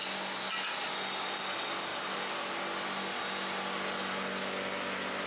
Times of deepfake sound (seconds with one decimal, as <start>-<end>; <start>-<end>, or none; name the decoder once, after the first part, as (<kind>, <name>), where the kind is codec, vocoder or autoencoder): none

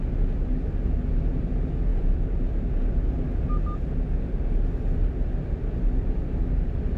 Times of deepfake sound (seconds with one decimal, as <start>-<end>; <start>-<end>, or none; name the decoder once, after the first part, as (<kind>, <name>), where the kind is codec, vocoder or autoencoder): none

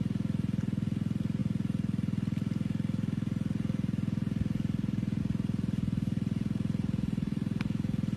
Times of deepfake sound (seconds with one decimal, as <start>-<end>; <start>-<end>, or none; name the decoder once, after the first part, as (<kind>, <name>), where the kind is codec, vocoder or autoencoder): none

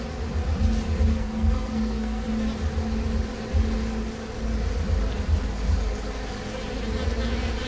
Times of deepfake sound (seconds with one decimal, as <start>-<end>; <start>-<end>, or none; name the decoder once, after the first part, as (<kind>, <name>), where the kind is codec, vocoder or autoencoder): 1.1-2.3 (codec, SNAC)

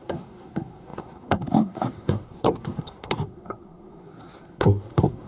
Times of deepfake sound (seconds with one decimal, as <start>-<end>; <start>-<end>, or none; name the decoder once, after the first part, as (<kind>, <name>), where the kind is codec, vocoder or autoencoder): 0.0-5.3 (codec, SNAC)